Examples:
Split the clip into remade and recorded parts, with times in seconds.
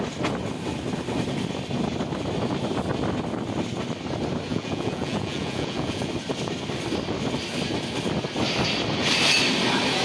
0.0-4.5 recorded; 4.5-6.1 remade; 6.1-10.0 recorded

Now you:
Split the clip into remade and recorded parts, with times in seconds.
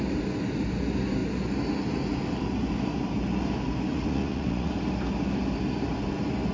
0.0-3.9 recorded; 3.9-4.7 remade; 4.7-6.5 recorded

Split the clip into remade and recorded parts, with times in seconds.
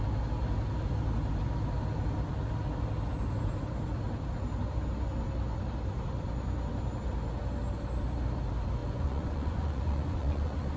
0.0-8.8 recorded; 8.8-10.8 remade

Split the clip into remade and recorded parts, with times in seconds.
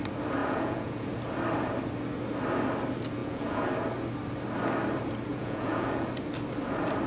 0.0-0.4 recorded; 0.4-1.1 remade; 1.1-3.2 recorded; 3.2-3.7 remade; 3.7-5.3 recorded; 5.3-6.1 remade; 6.1-7.1 recorded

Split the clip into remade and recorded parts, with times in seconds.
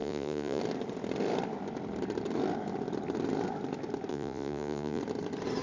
0.0-0.6 remade; 0.6-4.1 recorded; 4.1-5.0 remade; 5.0-5.6 recorded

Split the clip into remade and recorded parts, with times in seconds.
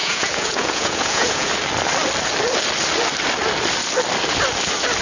0.0-1.5 remade; 1.5-5.0 recorded